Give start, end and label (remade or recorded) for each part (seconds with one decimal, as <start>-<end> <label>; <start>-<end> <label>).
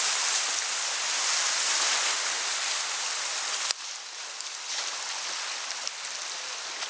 0.0-6.9 recorded